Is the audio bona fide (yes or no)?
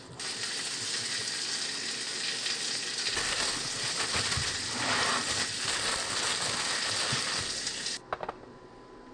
yes